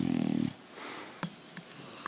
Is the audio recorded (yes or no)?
no